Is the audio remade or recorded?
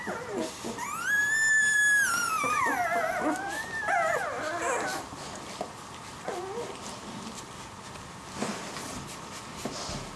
recorded